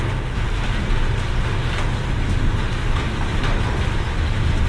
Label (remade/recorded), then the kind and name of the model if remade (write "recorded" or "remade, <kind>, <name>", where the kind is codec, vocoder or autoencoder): recorded